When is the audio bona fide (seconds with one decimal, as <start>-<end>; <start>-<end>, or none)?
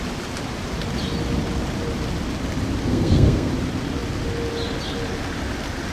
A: 0.0-2.9; 3.5-5.9